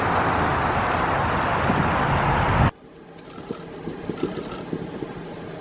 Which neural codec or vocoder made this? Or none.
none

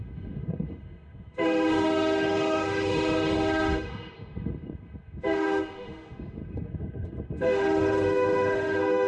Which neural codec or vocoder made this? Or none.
autoencoder, DAC-VAE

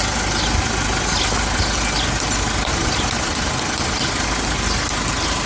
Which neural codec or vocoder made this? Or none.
none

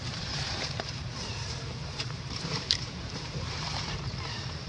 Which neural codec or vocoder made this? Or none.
vocoder, BigVGAN v2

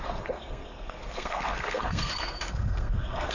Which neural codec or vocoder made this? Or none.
codec, SNAC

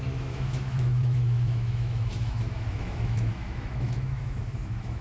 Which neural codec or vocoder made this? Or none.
autoencoder, DAC-VAE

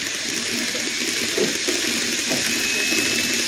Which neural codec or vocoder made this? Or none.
none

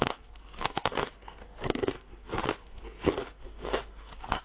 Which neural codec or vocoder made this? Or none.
codec, SNAC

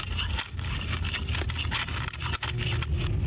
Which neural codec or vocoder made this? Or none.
none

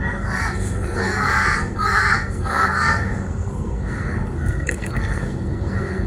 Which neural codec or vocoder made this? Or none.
codec, SNAC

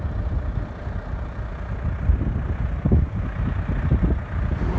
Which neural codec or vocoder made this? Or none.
none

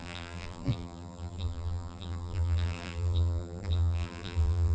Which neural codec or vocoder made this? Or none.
vocoder, BigVGAN v2